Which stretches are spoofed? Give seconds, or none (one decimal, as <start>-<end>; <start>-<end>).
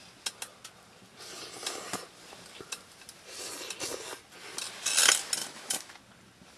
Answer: 5.4-5.9